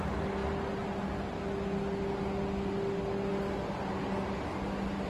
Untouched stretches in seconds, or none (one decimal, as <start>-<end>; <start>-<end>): 0.0-5.1